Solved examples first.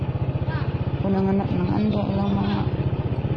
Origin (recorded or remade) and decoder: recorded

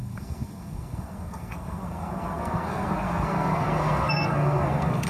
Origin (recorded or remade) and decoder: remade, codec, SNAC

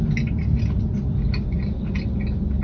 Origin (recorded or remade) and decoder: recorded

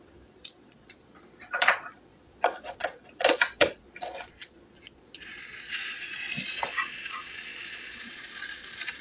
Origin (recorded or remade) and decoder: remade, vocoder, Vocos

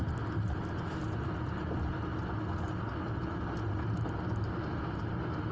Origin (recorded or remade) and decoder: recorded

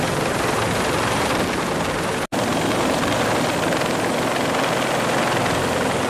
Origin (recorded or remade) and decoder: recorded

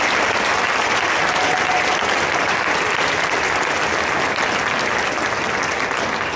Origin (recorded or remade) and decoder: recorded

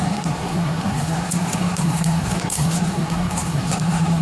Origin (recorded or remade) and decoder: remade, codec, SNAC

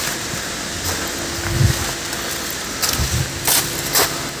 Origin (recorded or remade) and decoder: recorded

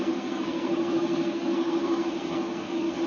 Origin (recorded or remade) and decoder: remade, codec, SNAC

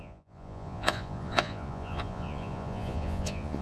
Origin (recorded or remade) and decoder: remade, vocoder, Vocos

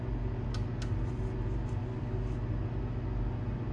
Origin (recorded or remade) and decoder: recorded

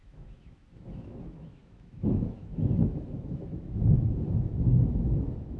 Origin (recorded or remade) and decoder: remade, autoencoder, DAC-VAE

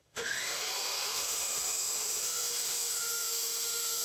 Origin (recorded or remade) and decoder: remade, autoencoder, DAC-VAE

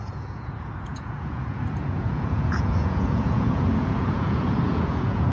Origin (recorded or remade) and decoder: remade, vocoder, Vocos